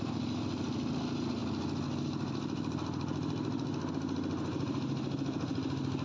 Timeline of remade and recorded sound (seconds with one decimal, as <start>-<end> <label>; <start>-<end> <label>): 0.0-6.0 recorded